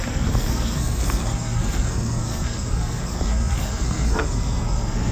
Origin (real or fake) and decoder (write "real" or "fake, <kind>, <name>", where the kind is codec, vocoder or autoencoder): fake, codec, SNAC